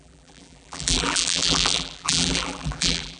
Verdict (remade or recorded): remade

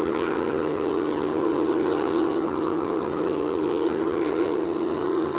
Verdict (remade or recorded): remade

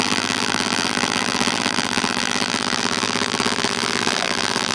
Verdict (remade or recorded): remade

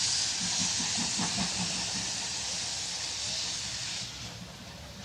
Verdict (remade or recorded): recorded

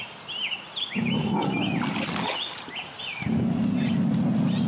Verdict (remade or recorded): recorded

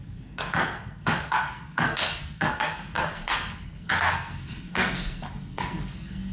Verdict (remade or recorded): remade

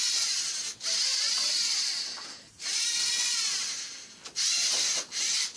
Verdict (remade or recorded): recorded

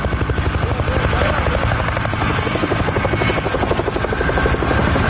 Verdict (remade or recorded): recorded